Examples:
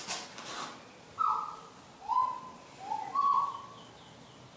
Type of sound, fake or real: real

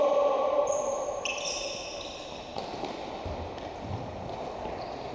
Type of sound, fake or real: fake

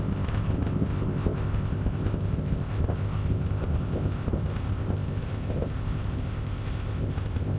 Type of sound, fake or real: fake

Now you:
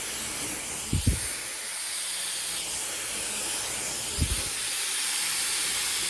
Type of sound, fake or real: real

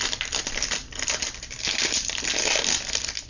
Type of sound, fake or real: real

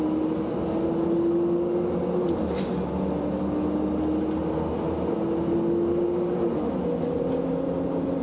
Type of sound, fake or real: real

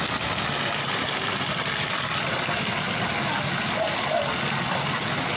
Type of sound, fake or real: real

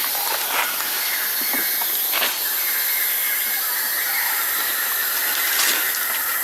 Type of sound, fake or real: real